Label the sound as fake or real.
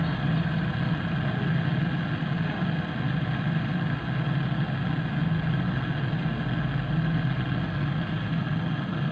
real